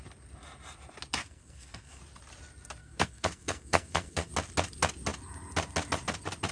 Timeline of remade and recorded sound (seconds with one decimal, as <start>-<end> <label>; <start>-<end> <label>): 0.0-1.2 recorded; 1.2-2.0 remade; 2.0-2.8 recorded; 2.8-4.3 remade; 4.3-6.5 recorded